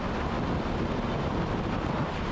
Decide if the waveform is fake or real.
real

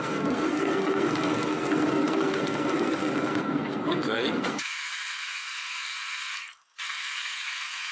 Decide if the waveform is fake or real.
fake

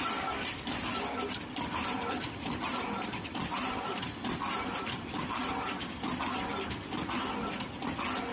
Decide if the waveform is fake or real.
real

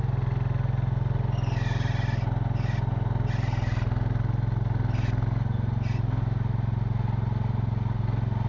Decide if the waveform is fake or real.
real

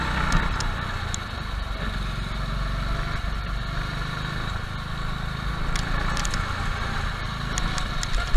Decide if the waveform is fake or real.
real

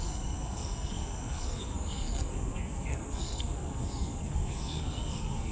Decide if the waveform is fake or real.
fake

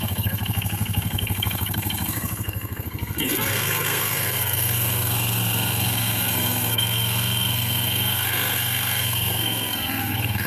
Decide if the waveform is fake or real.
fake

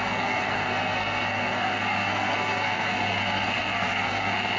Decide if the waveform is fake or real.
fake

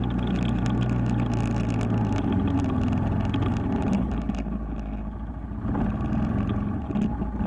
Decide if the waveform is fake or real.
real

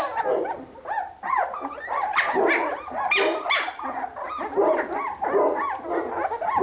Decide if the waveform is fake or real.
real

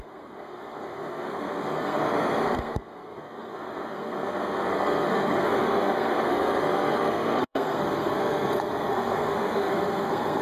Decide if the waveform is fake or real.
fake